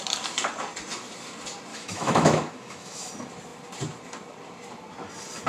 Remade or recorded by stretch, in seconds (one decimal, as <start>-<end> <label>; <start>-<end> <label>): 0.0-1.7 recorded; 1.7-3.1 remade; 3.1-5.5 recorded